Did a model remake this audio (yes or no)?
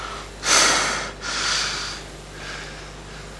no